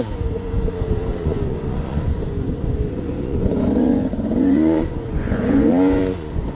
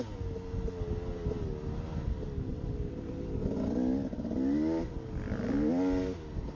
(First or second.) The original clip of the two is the second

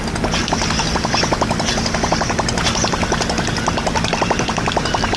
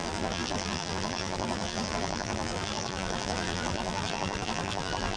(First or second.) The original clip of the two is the first